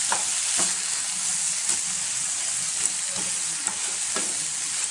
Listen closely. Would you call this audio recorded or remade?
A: recorded